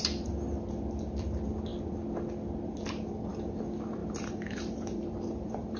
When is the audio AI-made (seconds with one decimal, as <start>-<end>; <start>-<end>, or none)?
4.0-5.8